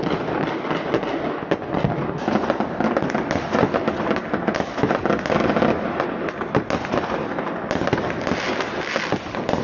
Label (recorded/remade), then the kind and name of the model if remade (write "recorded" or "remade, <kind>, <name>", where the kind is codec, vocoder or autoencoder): recorded